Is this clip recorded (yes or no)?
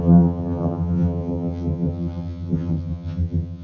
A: no